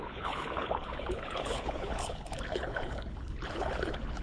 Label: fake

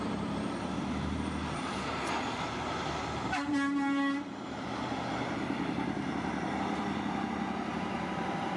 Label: fake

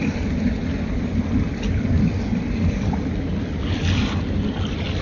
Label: real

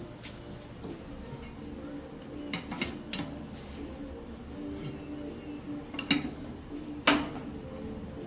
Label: real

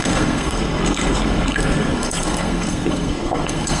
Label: fake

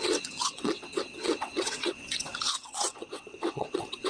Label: fake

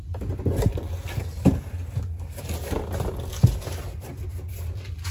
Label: real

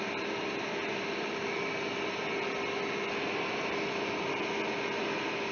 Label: real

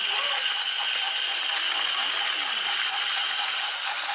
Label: real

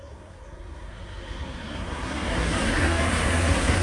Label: fake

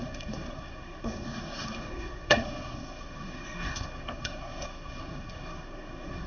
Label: fake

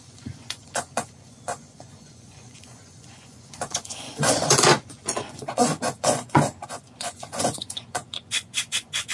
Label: fake